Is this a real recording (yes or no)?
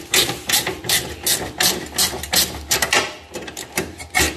yes